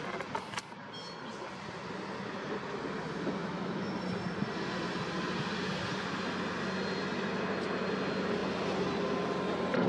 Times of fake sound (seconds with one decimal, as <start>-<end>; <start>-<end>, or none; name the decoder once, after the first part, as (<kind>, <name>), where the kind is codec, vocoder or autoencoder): 3.4-3.9 (autoencoder, DAC-VAE)